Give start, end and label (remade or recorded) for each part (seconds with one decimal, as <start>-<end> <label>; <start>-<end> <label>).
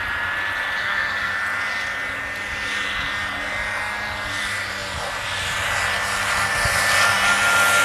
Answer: 0.0-0.8 recorded; 0.8-1.3 remade; 1.3-7.8 recorded